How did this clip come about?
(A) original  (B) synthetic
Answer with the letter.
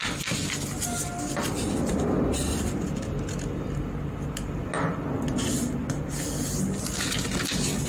A